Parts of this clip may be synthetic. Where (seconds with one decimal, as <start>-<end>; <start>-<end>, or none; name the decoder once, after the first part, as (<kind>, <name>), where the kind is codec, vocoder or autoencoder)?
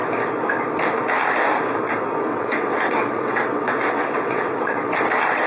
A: 2.3-4.9 (vocoder, WaveNeXt)